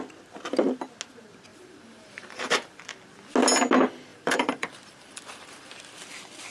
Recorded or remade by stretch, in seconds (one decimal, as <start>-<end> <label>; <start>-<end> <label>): 0.0-1.5 recorded; 1.5-2.8 remade; 2.8-4.1 recorded; 4.1-5.7 remade; 5.7-6.5 recorded